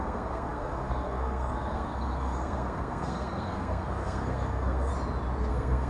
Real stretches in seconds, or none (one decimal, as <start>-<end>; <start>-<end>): 4.9-5.5